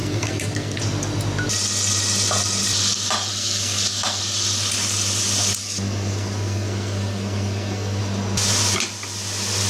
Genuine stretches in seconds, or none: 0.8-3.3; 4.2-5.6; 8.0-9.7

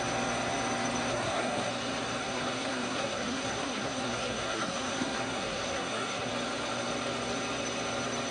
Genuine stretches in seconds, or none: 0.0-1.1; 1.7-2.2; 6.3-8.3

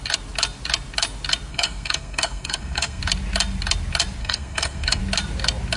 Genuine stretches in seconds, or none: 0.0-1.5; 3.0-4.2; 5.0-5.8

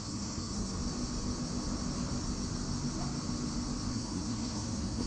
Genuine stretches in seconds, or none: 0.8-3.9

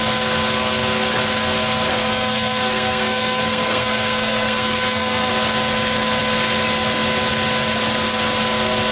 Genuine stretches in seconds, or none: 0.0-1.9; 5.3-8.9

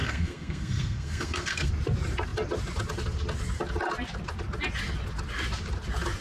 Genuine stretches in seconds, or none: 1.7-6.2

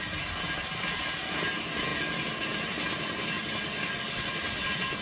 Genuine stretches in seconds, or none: 0.0-5.0

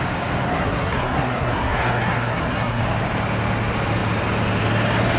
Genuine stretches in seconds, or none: 0.0-0.5; 2.8-5.2